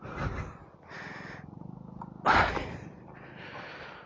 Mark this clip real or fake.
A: real